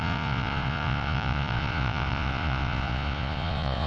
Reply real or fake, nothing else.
fake